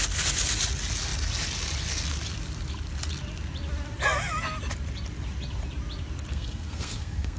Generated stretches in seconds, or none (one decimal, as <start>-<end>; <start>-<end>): 6.3-7.4